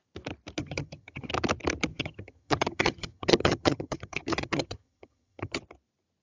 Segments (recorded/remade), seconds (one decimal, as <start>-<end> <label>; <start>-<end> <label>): 0.0-0.6 recorded; 0.6-1.3 remade; 1.3-1.9 recorded; 1.9-5.6 remade; 5.6-6.2 recorded